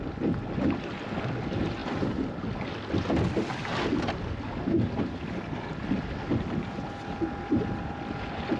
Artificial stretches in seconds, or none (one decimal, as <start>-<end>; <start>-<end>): none